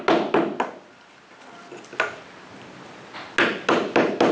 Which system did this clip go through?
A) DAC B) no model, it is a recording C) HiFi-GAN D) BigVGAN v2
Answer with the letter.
B